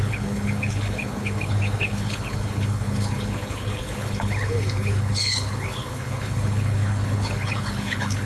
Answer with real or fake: fake